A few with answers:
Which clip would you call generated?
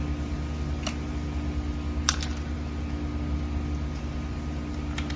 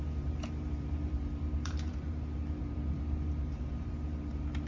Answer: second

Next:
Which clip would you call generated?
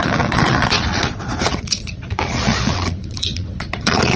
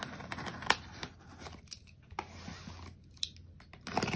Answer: first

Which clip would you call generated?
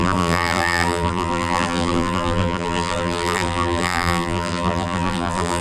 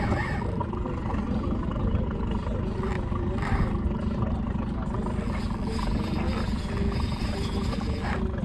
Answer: first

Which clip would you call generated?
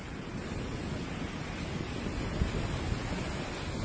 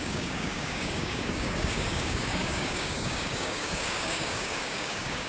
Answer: second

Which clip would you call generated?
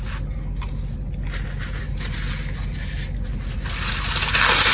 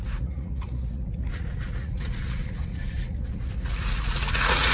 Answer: second